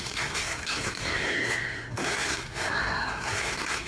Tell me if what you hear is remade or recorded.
remade